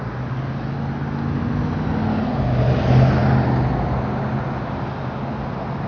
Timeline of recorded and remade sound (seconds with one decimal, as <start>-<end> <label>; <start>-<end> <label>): 0.0-5.9 recorded